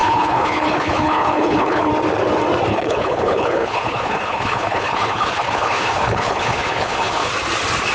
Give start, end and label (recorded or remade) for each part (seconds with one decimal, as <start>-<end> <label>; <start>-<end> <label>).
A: 0.0-1.9 remade; 1.9-2.7 recorded; 2.7-7.3 remade; 7.3-7.9 recorded